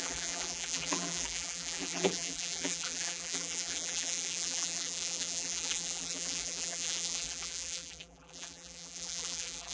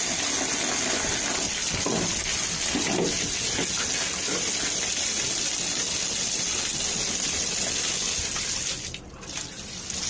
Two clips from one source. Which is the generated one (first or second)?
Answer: first